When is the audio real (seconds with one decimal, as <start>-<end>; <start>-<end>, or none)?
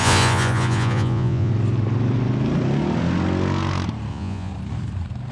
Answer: 1.5-4.1; 4.5-5.3